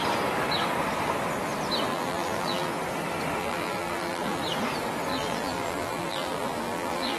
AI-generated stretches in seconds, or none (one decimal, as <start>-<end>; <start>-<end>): 1.9-2.7; 3.4-4.4; 5.1-7.2